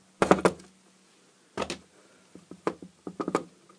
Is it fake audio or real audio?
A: real